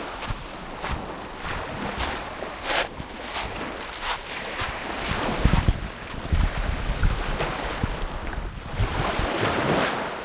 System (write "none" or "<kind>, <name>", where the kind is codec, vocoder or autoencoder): none